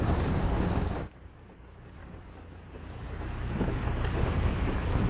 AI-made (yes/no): yes